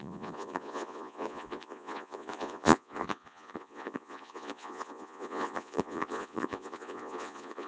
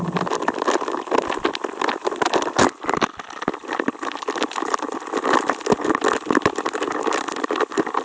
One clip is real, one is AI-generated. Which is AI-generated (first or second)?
first